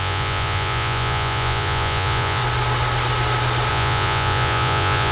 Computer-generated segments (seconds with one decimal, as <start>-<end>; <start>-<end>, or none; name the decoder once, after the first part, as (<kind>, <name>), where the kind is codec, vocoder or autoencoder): 0.0-2.4 (vocoder, Vocos); 3.7-5.1